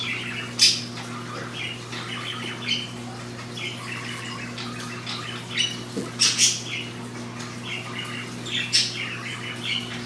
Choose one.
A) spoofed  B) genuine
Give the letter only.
B